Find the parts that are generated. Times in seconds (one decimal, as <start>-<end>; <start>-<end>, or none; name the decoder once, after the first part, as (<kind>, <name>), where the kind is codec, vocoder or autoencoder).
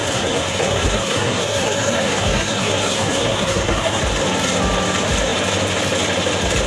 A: 0.0-4.0 (codec, SNAC)